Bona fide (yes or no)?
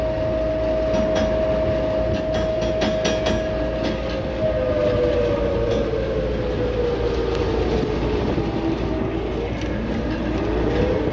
yes